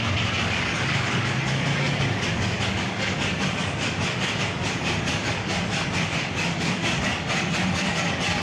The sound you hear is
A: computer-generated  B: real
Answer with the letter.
A